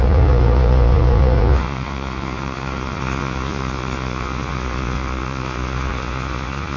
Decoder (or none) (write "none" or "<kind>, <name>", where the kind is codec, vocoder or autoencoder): vocoder, Vocos